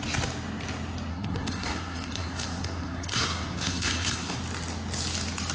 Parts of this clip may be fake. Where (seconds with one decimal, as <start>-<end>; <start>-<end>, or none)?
1.1-4.4